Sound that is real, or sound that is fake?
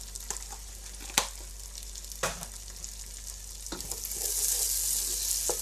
real